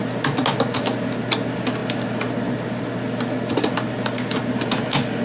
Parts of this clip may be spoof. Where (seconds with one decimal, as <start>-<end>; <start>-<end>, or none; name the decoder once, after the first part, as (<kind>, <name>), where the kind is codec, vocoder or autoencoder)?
none